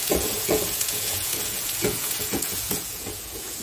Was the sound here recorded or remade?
remade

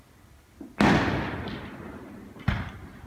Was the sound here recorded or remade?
recorded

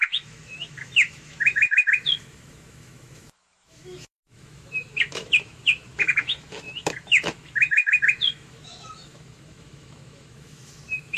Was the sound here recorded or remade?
remade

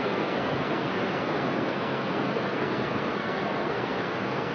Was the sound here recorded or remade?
remade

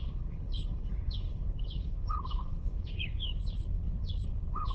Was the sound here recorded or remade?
remade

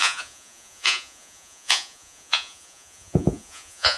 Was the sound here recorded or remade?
remade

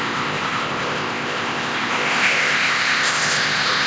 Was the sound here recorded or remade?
remade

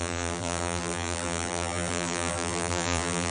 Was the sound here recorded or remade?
remade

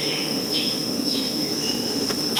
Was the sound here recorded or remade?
remade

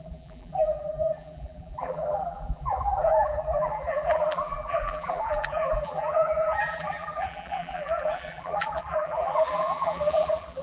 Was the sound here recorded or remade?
remade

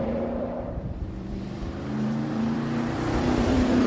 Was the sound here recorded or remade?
remade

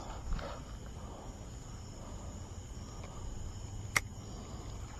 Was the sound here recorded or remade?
recorded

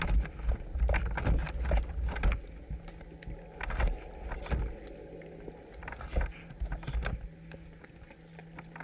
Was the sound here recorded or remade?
recorded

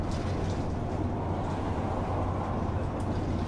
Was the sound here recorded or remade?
recorded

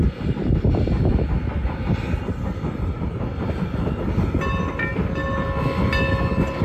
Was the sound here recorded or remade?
recorded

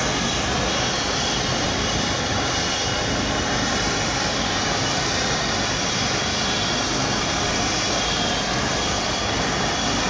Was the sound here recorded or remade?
recorded